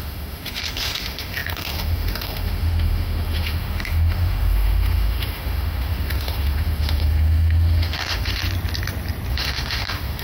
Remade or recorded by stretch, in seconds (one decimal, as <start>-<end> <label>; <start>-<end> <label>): 0.0-8.4 remade; 8.4-9.3 recorded; 9.3-10.2 remade